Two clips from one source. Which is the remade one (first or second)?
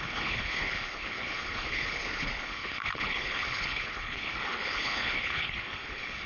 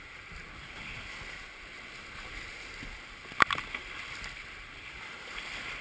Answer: first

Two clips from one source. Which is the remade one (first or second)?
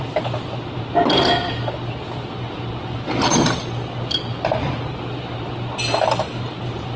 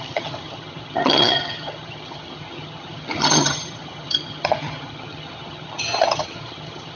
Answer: second